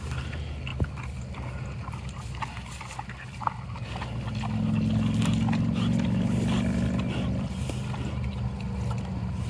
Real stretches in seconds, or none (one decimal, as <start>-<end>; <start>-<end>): 0.0-9.5